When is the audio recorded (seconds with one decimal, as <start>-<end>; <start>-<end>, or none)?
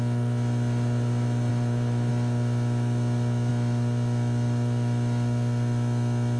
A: 0.0-1.5; 2.1-6.4